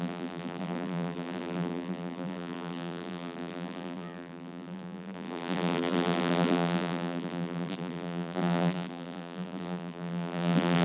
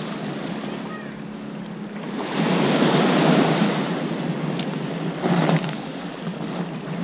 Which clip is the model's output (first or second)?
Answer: first